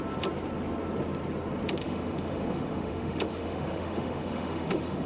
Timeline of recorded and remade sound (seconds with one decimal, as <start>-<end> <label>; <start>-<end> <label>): 0.0-1.8 recorded; 1.8-5.1 remade